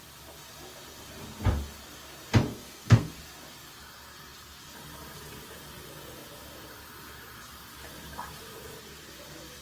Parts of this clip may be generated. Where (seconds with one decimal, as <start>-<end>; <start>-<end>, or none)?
2.5-3.1